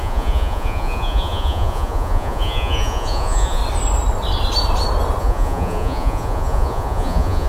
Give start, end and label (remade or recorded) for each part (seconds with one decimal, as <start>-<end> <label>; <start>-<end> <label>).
0.0-3.6 remade; 3.6-5.2 recorded; 5.2-7.5 remade